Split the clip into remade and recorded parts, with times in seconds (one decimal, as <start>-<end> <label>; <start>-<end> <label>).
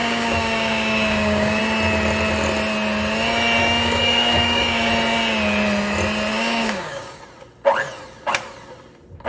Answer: 0.0-1.6 remade; 1.6-3.6 recorded; 3.6-4.9 remade; 4.9-6.3 recorded; 6.3-7.2 remade; 7.2-9.3 recorded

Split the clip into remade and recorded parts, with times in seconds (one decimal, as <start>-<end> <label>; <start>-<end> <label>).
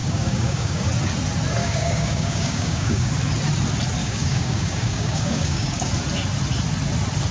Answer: 0.0-0.9 remade; 0.9-1.6 recorded; 1.6-3.1 remade; 3.1-4.0 recorded; 4.0-5.9 remade; 5.9-7.3 recorded